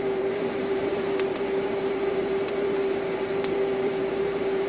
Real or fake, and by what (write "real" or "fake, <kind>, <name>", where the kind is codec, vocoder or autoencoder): fake, vocoder, BigVGAN v2